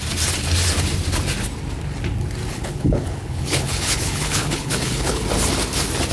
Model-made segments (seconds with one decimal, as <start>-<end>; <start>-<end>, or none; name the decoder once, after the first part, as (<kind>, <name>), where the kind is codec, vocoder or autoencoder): 2.5-5.2 (codec, HILCodec)